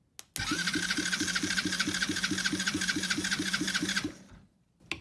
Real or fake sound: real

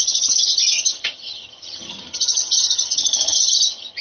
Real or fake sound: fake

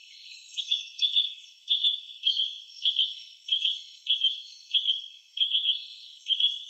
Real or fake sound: fake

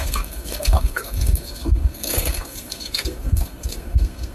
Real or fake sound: fake